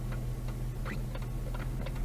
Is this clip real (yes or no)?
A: yes